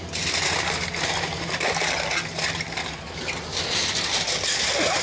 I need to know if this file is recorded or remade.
recorded